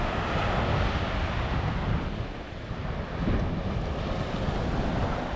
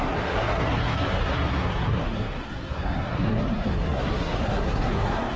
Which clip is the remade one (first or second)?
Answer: second